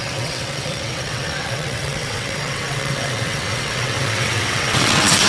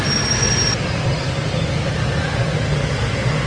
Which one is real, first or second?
second